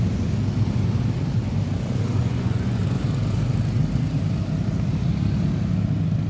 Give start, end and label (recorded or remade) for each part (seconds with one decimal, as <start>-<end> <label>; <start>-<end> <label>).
0.0-2.2 recorded; 2.2-2.8 remade; 2.8-6.3 recorded